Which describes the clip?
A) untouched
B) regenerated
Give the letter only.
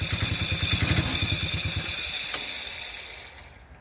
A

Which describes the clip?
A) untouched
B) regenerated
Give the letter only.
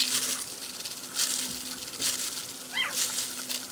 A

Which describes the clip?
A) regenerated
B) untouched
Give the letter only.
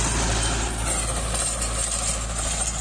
B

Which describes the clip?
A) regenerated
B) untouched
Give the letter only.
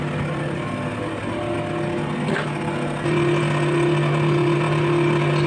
B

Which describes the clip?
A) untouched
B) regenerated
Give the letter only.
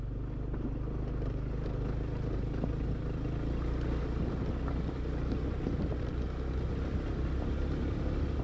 A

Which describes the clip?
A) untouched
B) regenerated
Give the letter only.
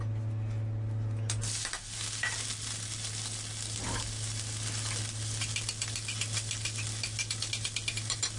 A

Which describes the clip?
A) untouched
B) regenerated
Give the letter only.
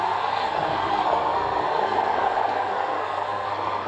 B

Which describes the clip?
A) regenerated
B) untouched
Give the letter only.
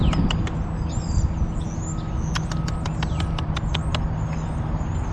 B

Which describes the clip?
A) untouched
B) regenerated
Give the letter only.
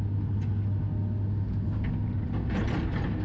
A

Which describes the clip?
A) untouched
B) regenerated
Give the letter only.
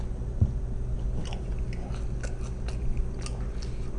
A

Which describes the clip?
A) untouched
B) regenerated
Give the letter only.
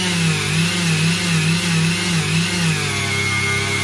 A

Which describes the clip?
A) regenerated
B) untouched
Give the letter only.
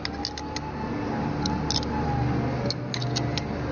B